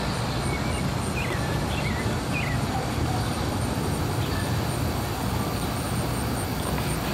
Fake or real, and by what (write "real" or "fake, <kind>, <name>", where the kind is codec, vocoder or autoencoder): real